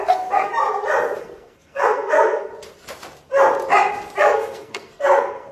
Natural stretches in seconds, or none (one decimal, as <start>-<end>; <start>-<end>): 0.5-1.2; 2.5-4.2